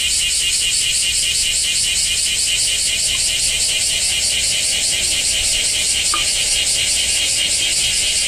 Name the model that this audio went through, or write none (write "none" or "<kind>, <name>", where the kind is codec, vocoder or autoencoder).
none